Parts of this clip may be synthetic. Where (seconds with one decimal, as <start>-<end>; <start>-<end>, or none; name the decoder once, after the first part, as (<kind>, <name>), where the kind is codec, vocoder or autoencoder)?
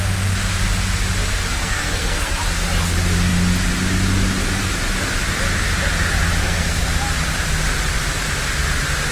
1.5-2.4 (codec, SNAC); 6.4-6.9